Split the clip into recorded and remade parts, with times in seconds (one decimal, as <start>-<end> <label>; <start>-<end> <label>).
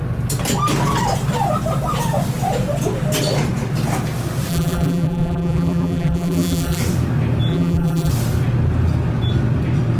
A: 0.0-4.5 recorded; 4.5-6.8 remade; 6.8-7.5 recorded; 7.5-8.1 remade; 8.1-10.0 recorded